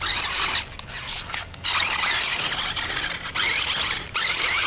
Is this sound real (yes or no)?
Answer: yes